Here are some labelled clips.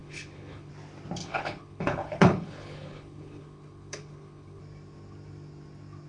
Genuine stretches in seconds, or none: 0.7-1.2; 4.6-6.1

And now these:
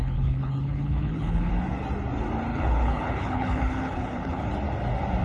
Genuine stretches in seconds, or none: 1.5-2.5; 4.5-5.2

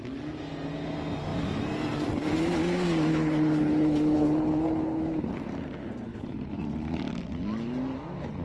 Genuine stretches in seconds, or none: 0.0-3.1; 5.3-6.1; 6.6-8.4

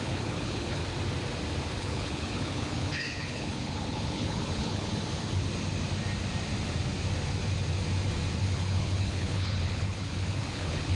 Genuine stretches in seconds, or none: 0.8-1.8; 4.9-8.4

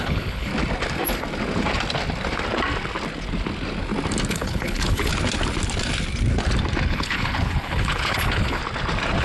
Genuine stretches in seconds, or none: 0.5-4.3; 5.1-6.9; 8.6-9.2

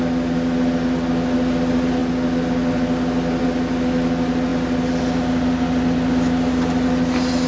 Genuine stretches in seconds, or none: 0.0-7.5

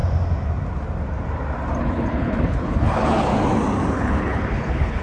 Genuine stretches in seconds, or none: 0.0-1.8; 3.3-3.9

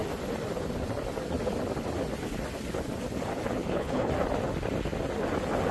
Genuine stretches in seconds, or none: 0.0-3.6; 4.1-5.7